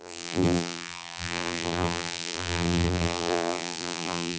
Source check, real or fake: fake